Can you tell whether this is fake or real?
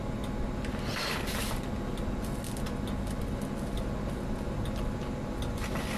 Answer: real